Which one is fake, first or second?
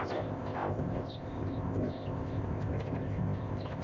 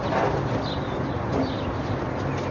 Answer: first